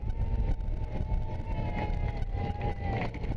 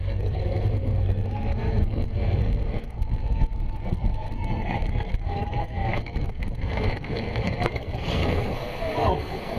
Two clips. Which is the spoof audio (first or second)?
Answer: second